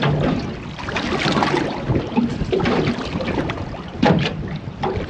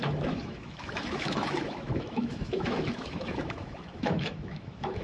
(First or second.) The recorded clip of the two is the first